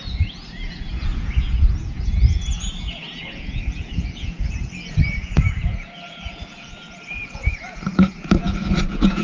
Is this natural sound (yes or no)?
no